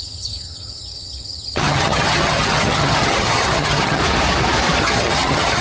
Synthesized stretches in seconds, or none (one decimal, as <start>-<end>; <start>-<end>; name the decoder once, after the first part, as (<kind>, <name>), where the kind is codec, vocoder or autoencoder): 0.0-4.0 (vocoder, HiFi-GAN); 4.8-5.6